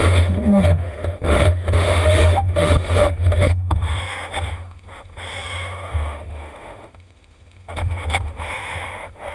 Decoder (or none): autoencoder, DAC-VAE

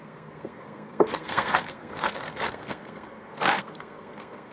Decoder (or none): codec, SNAC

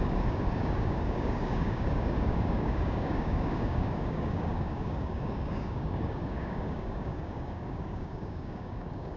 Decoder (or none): codec, DAC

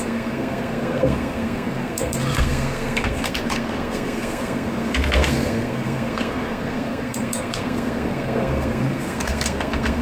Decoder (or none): codec, SNAC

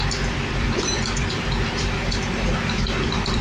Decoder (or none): vocoder, BigVGAN v2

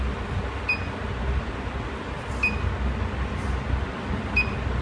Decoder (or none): none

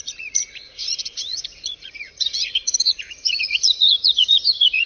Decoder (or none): vocoder, Vocos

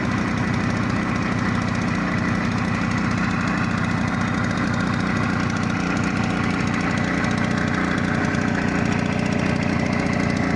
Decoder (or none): none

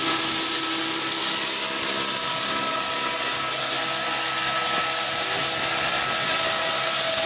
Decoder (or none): none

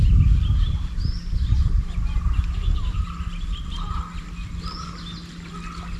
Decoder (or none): none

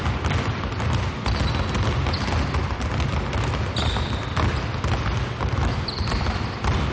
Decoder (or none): none